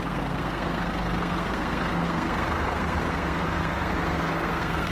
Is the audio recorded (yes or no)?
no